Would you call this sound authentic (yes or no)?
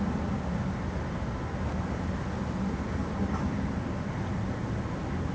yes